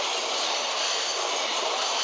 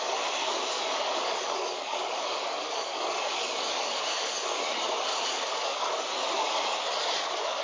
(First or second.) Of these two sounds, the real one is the first